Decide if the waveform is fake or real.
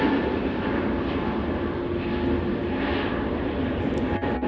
real